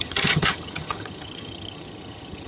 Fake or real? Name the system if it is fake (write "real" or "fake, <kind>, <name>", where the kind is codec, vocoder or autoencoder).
fake, vocoder, HiFi-GAN